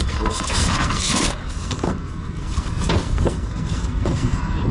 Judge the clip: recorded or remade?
remade